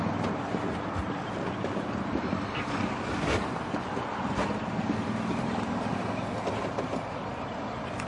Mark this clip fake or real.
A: real